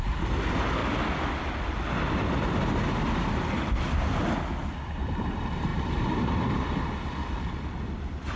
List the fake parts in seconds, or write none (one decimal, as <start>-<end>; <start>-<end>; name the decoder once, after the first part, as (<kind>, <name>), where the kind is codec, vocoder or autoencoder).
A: 5.7-6.3 (vocoder, BigVGAN v2)